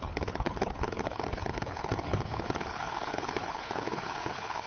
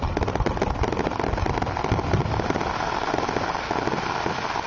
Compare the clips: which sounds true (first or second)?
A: second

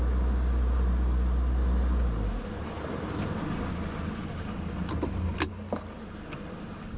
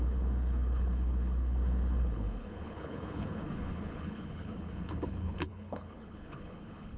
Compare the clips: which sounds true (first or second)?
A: first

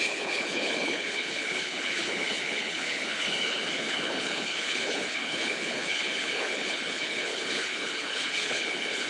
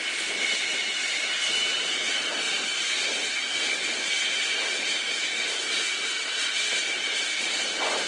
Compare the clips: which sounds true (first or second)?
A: second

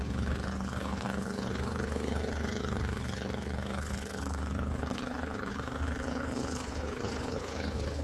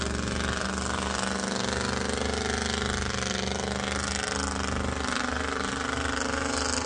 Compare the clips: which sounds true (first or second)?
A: second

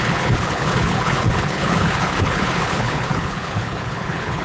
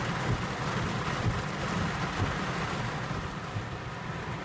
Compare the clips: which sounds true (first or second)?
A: second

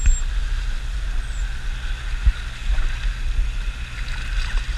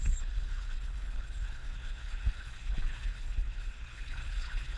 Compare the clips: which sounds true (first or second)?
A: first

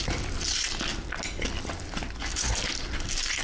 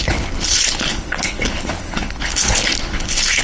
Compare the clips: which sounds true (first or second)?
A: first